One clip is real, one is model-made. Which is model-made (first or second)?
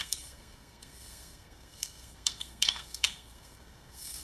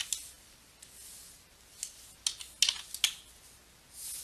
first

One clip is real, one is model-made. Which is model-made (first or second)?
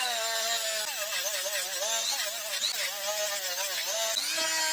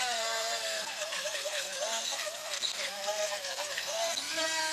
second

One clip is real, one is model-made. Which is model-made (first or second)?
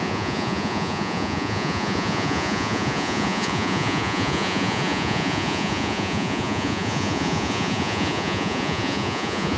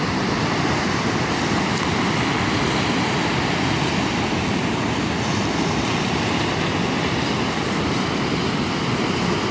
first